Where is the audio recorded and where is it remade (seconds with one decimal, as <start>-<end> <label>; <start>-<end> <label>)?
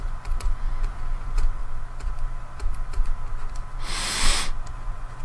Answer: 0.0-1.6 remade; 1.6-4.7 recorded; 4.7-5.2 remade